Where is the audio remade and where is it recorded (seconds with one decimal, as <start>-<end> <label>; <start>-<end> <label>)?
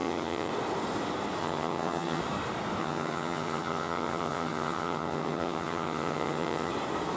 0.0-0.5 remade; 0.5-1.4 recorded; 1.4-2.2 remade; 2.2-2.8 recorded; 2.8-6.7 remade; 6.7-7.2 recorded